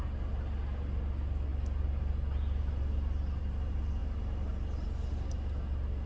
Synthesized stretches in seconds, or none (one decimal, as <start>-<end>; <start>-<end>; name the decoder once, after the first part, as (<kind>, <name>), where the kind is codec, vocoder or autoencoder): none